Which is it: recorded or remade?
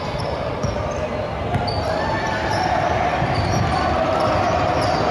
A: recorded